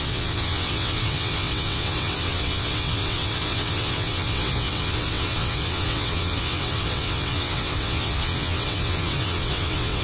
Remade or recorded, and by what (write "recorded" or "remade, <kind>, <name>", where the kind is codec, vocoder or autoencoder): remade, vocoder, WaveNeXt